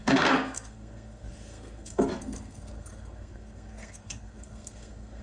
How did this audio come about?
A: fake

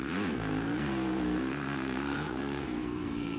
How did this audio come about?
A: fake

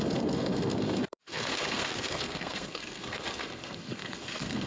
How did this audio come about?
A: fake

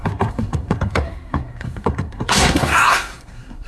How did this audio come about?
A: fake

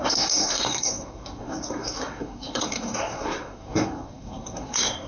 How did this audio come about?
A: fake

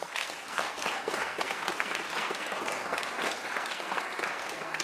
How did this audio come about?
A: fake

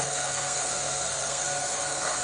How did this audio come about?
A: fake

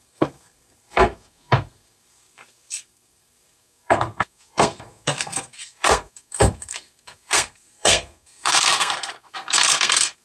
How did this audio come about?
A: fake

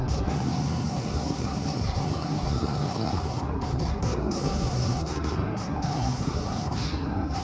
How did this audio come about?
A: fake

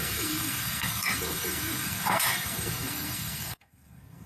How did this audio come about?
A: fake